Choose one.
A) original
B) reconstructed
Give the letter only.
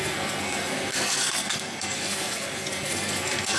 B